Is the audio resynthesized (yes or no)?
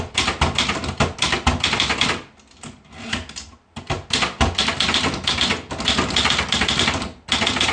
no